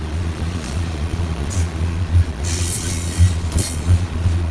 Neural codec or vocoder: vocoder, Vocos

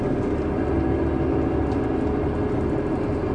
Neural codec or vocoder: none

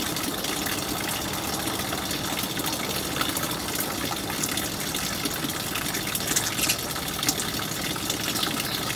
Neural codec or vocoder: none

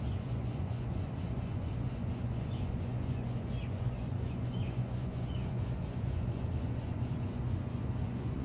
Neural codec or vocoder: vocoder, Vocos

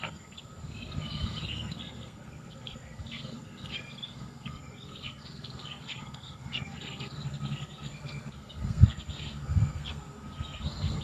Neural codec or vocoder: codec, SNAC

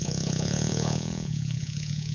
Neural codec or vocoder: vocoder, Vocos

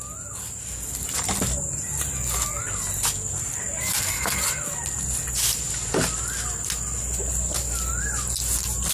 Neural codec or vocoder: none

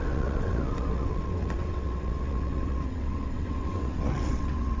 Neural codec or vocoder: vocoder, WaveNeXt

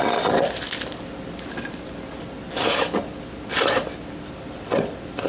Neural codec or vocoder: none